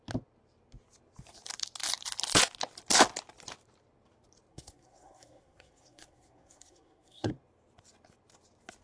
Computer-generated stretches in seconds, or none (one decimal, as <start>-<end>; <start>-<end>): 4.5-7.3